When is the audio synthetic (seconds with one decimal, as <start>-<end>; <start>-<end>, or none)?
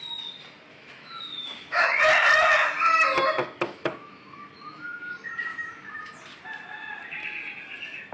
0.7-2.0; 3.4-5.1; 5.5-6.1